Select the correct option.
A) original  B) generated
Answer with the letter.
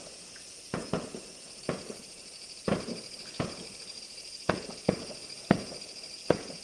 B